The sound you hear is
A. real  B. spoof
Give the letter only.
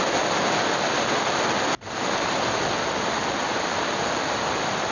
A